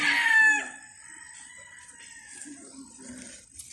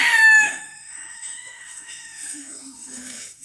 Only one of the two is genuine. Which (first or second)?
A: first